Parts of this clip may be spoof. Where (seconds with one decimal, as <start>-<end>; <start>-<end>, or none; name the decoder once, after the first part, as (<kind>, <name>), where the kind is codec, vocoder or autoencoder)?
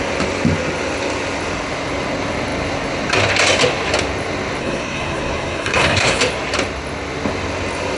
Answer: 4.6-6.2 (codec, SNAC)